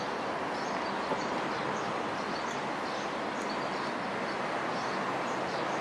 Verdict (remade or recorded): recorded